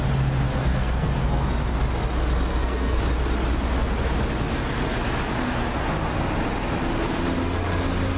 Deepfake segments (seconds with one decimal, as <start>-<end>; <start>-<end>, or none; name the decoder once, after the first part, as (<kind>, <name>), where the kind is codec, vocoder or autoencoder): 0.6-1.5 (codec, SNAC); 2.5-3.0